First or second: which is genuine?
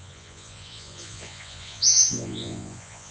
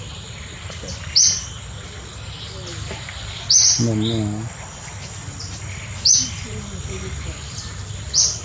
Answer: second